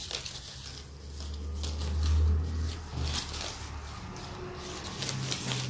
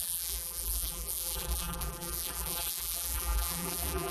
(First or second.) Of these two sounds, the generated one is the second